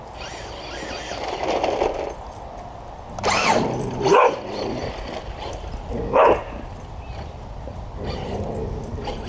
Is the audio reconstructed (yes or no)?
no